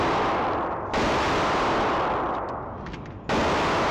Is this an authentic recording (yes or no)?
yes